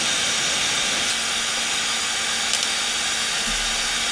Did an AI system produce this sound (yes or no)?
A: no